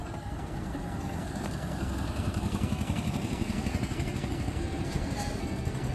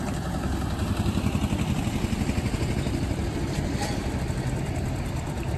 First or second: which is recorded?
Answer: second